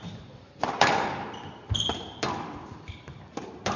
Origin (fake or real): fake